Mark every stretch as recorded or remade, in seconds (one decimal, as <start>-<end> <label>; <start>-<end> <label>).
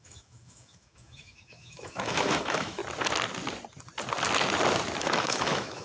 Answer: 0.0-2.8 remade; 2.8-5.0 recorded; 5.0-5.8 remade